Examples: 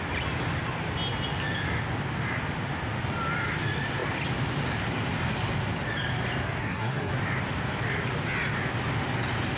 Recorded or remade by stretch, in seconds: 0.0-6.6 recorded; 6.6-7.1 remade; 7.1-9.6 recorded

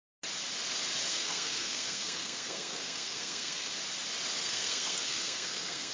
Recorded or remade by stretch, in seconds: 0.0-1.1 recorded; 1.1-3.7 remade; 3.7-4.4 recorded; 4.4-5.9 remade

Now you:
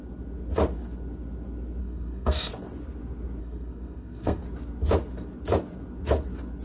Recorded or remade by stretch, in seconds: 0.0-1.8 recorded; 1.8-2.5 remade; 2.5-3.4 recorded; 3.4-4.4 remade; 4.4-6.6 recorded